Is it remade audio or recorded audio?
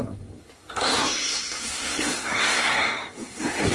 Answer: remade